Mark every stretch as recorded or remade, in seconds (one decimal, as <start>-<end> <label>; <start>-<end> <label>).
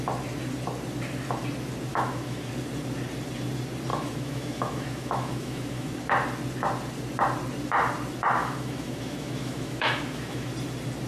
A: 0.0-1.9 recorded; 1.9-2.5 remade; 2.5-3.9 recorded; 3.9-5.9 remade; 5.9-8.4 recorded; 8.4-10.5 remade; 10.5-11.1 recorded